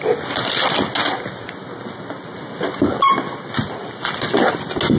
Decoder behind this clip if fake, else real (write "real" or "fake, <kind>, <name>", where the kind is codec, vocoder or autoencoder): real